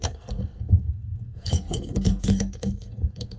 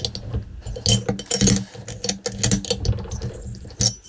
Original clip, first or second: second